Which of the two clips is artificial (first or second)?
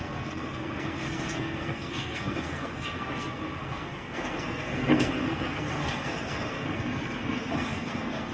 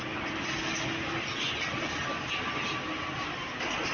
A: first